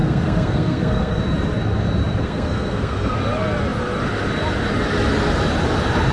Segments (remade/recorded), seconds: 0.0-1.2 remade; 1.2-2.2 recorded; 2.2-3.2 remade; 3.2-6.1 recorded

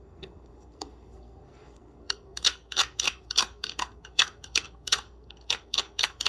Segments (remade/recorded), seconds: 0.0-6.3 remade

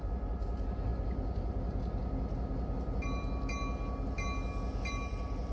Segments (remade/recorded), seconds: 0.0-5.5 recorded

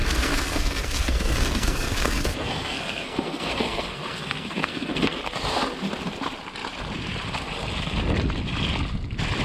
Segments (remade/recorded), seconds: 0.0-5.2 remade; 5.2-9.4 recorded

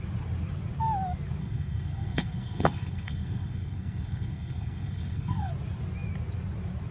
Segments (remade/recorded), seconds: 0.0-1.4 recorded; 1.4-5.5 remade; 5.5-6.9 recorded